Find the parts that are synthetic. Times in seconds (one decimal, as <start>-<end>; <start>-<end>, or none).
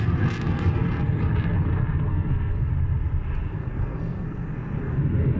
2.1-2.7; 3.6-5.0